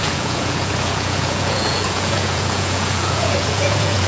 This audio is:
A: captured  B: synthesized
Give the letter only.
B